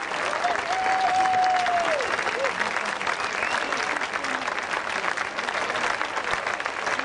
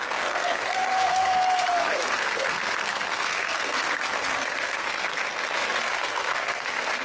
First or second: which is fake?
second